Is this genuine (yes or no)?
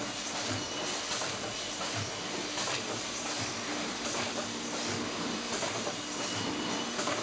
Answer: yes